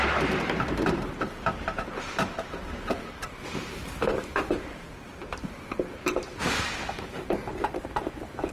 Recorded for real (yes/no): no